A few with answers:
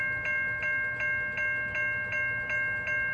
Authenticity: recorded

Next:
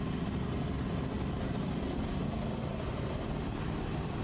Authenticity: recorded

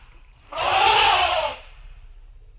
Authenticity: remade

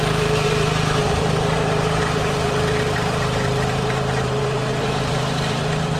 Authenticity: remade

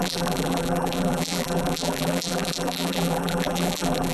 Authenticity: remade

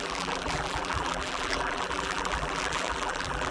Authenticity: remade